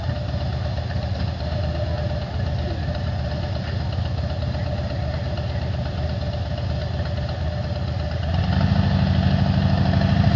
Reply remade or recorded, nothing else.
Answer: recorded